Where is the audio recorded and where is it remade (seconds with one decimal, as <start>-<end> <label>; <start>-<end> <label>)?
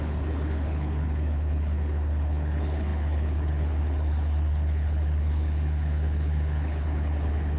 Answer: 0.0-7.6 remade